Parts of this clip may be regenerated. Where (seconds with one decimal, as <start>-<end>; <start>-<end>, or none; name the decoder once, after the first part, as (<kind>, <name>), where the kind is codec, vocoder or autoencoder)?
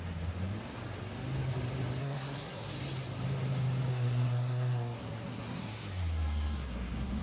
2.0-2.7 (codec, SNAC); 3.9-7.2